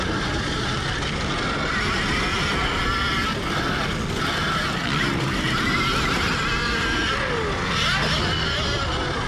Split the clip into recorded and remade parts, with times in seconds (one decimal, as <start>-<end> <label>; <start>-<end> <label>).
0.0-9.3 recorded